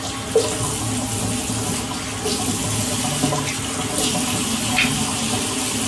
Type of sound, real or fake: real